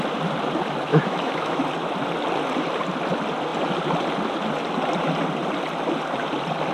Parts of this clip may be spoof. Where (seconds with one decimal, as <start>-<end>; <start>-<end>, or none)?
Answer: 0.9-1.6